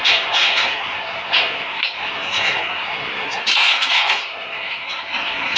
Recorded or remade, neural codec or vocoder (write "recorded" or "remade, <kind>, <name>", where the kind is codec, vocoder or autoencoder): remade, codec, SNAC